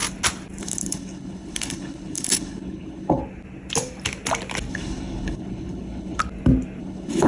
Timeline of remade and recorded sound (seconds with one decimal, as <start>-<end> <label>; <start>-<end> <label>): 0.0-0.6 recorded; 0.6-3.2 remade; 3.2-4.7 recorded; 4.7-6.2 remade; 6.2-6.8 recorded; 6.8-7.3 remade